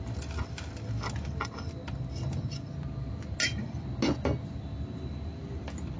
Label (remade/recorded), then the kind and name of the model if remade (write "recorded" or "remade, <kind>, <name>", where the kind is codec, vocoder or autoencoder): recorded